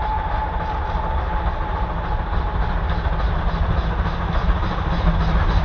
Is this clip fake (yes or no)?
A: no